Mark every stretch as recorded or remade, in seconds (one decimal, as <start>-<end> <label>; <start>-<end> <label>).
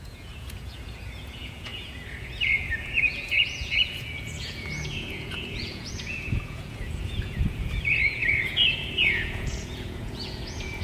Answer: 0.0-10.8 remade